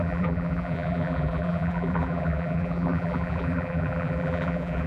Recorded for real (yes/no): no